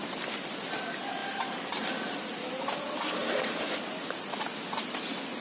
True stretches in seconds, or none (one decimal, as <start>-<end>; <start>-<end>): 0.7-1.2; 2.5-3.2; 4.2-5.4